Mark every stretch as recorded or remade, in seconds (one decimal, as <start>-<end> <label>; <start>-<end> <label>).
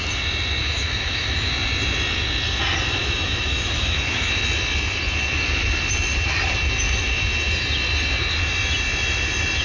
0.0-0.6 recorded; 0.6-1.5 remade; 1.5-3.0 recorded; 3.0-4.3 remade; 4.3-9.6 recorded